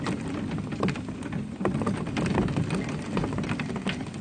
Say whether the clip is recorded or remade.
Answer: recorded